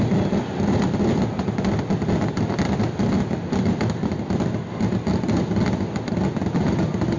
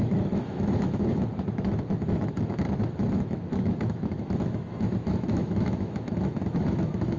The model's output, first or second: second